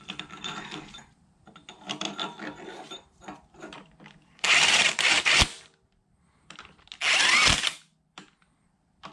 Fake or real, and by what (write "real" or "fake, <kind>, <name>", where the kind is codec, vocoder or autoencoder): fake, vocoder, BigVGAN v2